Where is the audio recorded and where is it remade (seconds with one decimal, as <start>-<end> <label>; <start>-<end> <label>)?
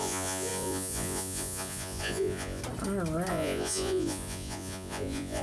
0.0-2.6 remade; 2.6-3.3 recorded; 3.3-5.4 remade